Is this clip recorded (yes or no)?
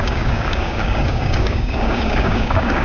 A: no